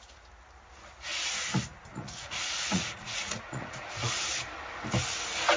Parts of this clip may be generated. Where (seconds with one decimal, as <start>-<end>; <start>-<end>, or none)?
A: 1.9-4.1